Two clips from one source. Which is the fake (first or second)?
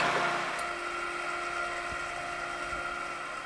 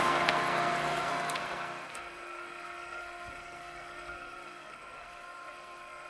second